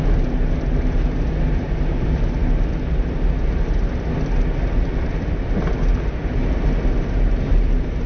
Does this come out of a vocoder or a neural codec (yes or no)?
yes